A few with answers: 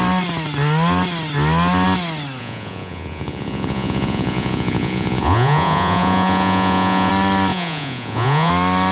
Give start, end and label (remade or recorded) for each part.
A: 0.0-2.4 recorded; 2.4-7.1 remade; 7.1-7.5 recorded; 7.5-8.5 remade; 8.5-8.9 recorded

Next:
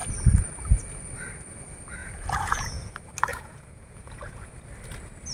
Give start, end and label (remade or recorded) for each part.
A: 0.0-2.0 recorded; 2.0-2.9 remade; 2.9-3.3 recorded; 3.3-4.5 remade; 4.5-5.3 recorded

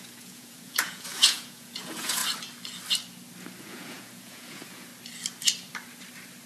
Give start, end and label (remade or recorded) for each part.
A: 0.0-2.2 remade; 2.2-3.6 recorded; 3.6-4.9 remade; 4.9-6.5 recorded

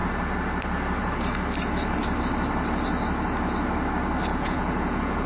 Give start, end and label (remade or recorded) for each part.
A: 0.0-4.3 recorded; 4.3-5.3 remade

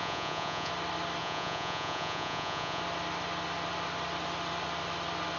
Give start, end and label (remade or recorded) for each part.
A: 0.0-0.7 remade; 0.7-1.2 recorded; 1.2-2.8 remade; 2.8-5.4 recorded